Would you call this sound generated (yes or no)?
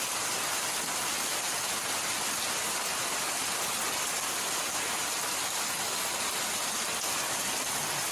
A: no